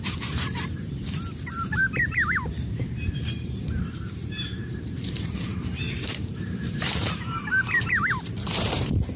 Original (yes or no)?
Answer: no